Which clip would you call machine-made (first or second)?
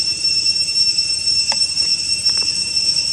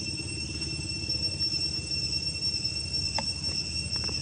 first